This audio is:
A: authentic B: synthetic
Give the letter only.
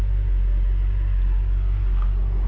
A